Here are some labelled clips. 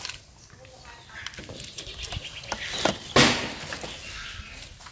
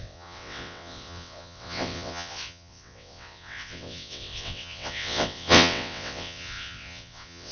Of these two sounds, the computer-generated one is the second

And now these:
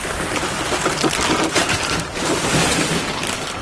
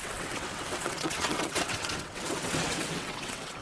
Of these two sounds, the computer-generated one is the second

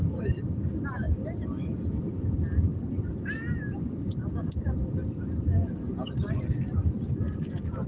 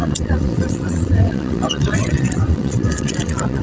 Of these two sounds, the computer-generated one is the second